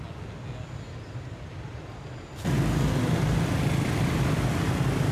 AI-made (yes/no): no